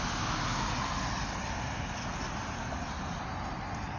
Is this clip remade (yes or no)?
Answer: no